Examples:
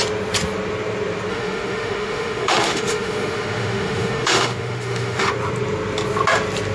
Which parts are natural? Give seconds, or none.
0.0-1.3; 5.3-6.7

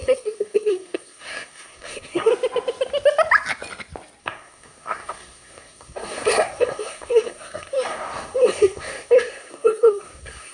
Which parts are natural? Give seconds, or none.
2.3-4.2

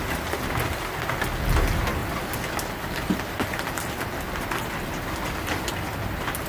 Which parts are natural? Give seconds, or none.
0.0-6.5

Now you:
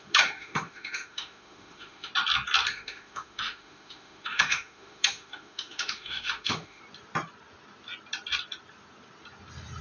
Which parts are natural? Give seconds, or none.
2.1-2.7; 6.8-9.8

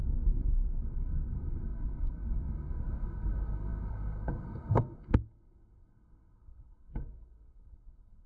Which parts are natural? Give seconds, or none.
none

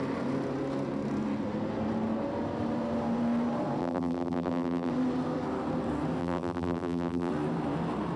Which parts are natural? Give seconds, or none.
0.0-3.8; 4.9-6.2; 7.3-8.2

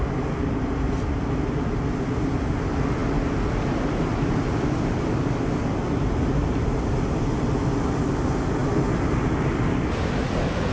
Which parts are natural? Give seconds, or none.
0.0-10.7